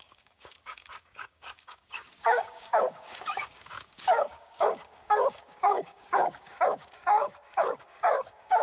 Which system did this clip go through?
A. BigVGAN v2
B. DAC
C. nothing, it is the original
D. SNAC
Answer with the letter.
B